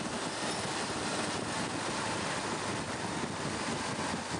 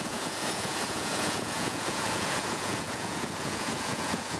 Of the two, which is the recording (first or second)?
first